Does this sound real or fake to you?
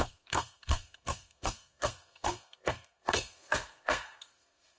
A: fake